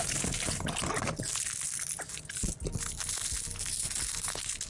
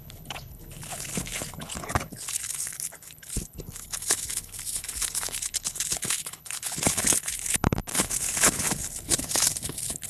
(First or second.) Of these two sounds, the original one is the first